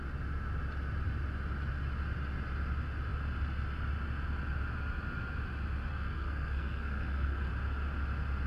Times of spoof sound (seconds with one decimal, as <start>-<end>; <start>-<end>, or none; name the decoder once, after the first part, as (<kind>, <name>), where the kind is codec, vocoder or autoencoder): 5.9-7.5 (codec, SNAC)